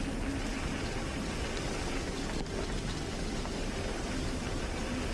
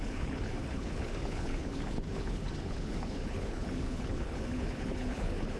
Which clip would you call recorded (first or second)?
first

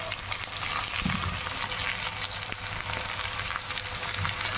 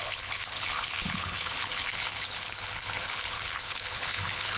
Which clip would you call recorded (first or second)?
first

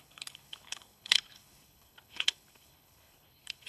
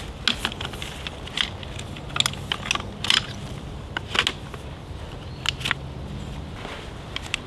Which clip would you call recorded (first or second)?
second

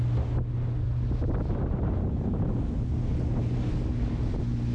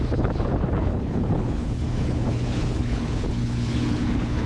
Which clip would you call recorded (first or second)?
first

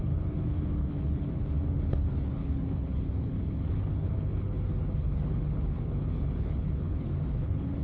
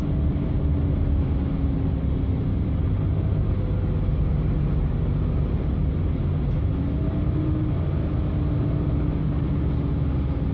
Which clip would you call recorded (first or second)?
second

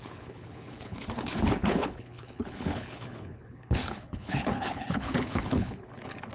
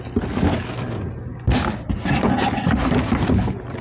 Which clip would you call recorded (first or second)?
second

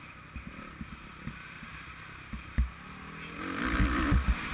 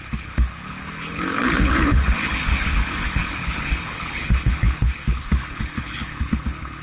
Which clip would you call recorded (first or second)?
first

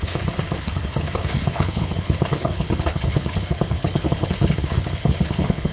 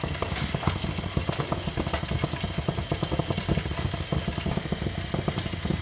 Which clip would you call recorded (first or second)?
second